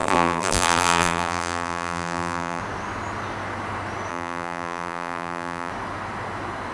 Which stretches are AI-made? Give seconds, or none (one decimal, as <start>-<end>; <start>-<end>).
0.0-2.6; 4.1-5.7